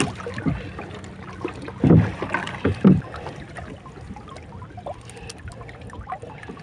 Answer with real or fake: real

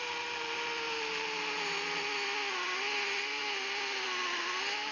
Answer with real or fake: real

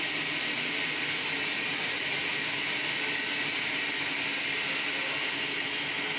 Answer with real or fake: real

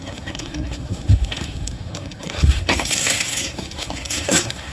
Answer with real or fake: fake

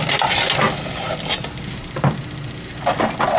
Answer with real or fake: real